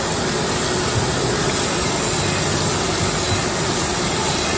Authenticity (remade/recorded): recorded